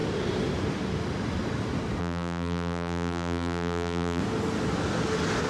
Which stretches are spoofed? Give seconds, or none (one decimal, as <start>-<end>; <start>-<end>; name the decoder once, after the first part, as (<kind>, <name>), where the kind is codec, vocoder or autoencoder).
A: 2.0-4.2 (vocoder, BigVGAN v2)